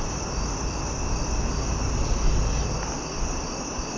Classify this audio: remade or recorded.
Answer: recorded